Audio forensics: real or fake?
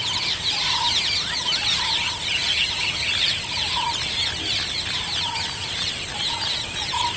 real